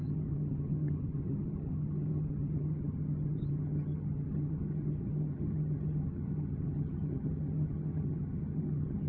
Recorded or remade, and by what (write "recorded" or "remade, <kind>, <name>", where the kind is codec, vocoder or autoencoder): remade, vocoder, HiFi-GAN